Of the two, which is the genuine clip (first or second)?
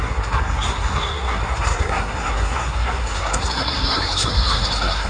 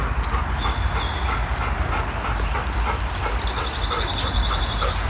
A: second